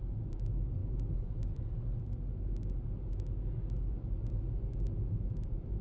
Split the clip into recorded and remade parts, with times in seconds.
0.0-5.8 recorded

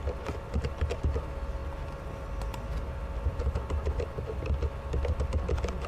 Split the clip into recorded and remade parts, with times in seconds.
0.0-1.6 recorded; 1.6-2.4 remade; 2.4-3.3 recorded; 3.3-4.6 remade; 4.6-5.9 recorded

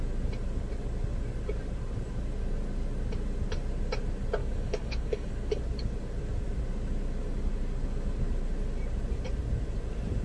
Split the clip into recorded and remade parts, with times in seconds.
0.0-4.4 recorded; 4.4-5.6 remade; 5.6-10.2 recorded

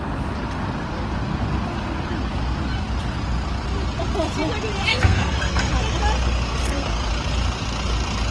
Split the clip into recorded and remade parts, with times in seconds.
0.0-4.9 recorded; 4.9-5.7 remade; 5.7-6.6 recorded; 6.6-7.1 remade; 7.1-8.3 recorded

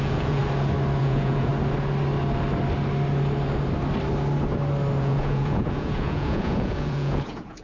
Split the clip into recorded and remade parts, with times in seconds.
0.0-0.4 remade; 0.4-1.0 recorded; 1.0-1.5 remade; 1.5-5.0 recorded; 5.0-7.6 remade

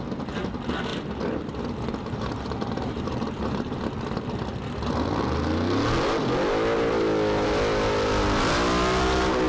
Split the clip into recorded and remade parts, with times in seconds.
0.0-0.9 recorded; 0.9-3.8 remade; 3.8-9.5 recorded

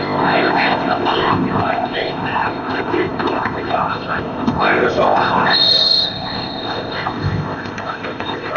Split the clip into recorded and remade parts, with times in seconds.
0.0-8.6 remade

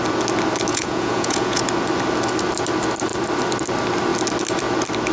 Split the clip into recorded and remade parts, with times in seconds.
0.0-0.7 recorded; 0.7-1.6 remade; 1.6-5.1 recorded